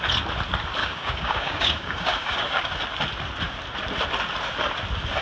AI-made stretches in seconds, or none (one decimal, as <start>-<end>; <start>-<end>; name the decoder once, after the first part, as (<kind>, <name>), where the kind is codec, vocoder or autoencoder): 0.8-2.6 (codec, DAC)